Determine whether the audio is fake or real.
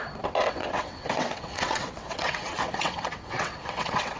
fake